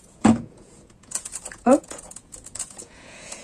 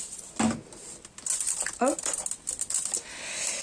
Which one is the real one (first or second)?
second